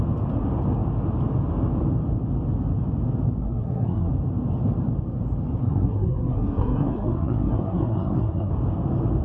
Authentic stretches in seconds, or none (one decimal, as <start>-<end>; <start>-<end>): 0.0-3.4; 4.1-5.6; 8.5-9.2